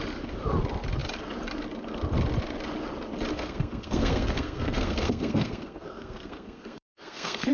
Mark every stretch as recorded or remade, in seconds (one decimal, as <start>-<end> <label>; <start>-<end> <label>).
0.0-3.3 recorded; 3.3-7.5 remade